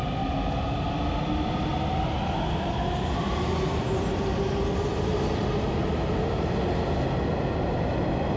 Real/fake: real